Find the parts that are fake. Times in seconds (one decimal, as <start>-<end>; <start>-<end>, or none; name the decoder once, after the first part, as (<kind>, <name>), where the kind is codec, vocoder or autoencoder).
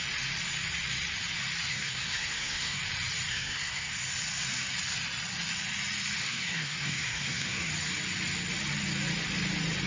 1.7-2.8 (codec, SNAC); 3.3-3.9; 6.2-7.7